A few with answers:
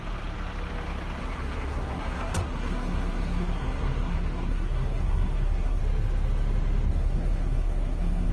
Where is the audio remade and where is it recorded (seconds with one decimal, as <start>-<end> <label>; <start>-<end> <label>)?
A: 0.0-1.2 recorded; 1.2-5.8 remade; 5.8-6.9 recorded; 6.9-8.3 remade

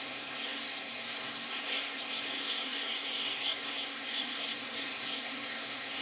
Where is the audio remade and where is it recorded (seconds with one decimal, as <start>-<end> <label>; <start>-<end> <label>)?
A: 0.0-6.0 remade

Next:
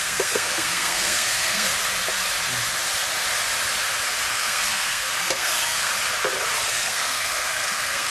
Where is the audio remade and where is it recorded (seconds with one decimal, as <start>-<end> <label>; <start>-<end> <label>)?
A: 0.0-1.7 remade; 1.7-4.3 recorded; 4.3-5.9 remade; 5.9-6.7 recorded; 6.7-8.1 remade

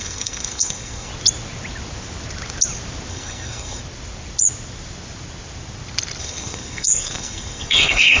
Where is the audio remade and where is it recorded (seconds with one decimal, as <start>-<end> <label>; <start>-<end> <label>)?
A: 0.0-1.1 remade; 1.1-3.1 recorded; 3.1-3.8 remade; 3.8-6.2 recorded; 6.2-8.2 remade

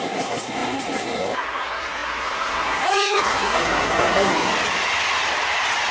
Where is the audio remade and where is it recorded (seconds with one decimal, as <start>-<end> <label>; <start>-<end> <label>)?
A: 0.0-4.5 remade; 4.5-5.9 recorded